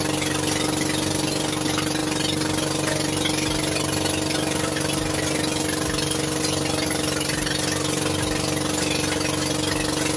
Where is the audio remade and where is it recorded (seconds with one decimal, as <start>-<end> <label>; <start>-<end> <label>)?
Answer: 0.0-10.2 recorded